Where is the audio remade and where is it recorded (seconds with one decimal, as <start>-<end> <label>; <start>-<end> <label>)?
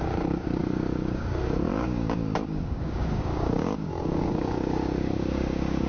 0.0-5.9 remade